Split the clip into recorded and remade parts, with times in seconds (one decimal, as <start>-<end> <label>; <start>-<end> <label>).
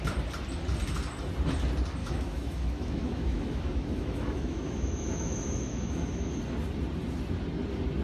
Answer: 0.0-2.0 recorded; 2.0-6.4 remade; 6.4-8.0 recorded